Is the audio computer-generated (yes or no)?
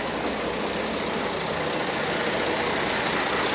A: no